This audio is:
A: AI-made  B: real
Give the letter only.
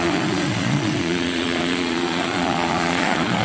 A